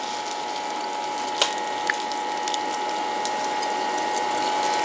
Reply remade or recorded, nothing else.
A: recorded